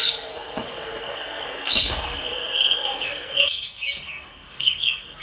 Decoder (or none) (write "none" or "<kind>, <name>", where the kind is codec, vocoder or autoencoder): codec, SNAC